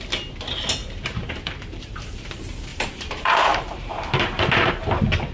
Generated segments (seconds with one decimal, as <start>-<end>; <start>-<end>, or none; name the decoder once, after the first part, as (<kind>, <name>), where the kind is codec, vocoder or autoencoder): 0.8-1.9 (vocoder, BigVGAN v2); 2.7-4.7